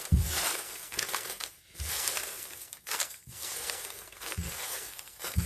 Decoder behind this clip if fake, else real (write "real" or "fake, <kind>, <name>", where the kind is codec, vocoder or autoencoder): fake, codec, SNAC